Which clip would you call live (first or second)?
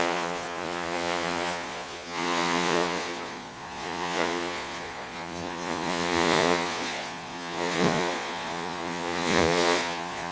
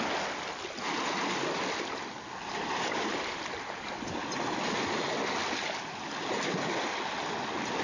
second